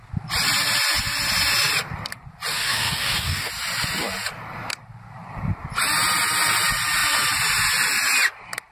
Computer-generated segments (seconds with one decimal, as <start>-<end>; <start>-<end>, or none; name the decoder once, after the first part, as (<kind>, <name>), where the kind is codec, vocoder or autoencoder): 2.5-3.5 (codec, DAC)